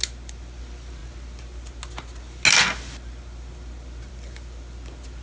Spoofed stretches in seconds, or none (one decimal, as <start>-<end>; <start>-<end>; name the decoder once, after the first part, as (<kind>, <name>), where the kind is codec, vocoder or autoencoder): none